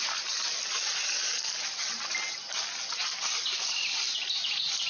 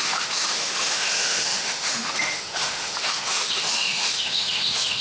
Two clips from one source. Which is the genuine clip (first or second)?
first